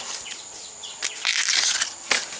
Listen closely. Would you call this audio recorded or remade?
recorded